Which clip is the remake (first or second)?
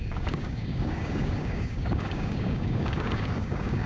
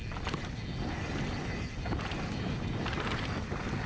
first